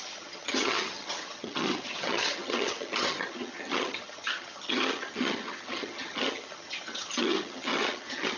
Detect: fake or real fake